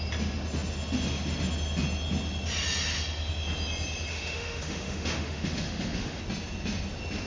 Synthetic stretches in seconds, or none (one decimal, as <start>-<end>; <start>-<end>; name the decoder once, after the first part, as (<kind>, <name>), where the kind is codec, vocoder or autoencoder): 4.1-6.2 (autoencoder, DAC-VAE)